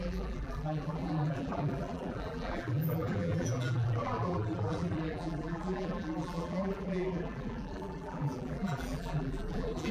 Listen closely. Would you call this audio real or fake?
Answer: fake